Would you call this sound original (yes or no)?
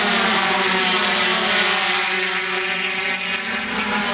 no